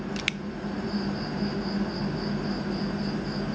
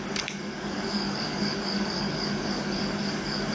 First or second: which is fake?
second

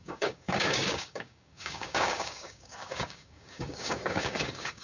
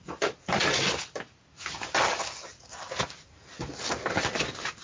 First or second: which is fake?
first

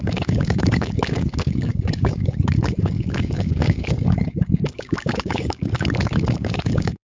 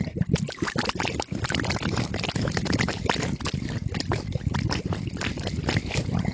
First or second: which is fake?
first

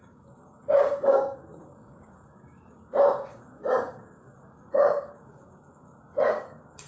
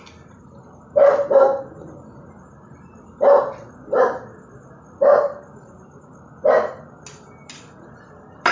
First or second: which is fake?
first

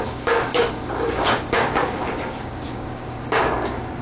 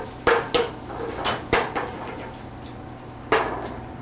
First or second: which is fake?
first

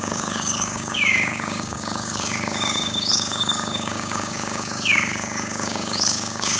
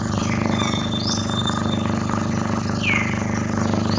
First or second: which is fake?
first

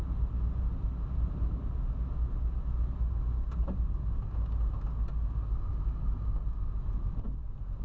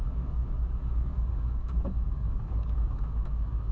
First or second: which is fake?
second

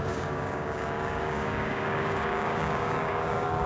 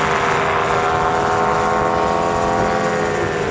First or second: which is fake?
first